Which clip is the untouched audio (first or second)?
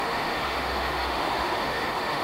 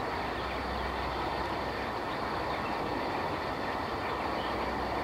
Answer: second